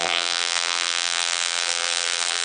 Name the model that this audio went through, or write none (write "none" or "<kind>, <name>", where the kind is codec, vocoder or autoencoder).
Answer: vocoder, BigVGAN v2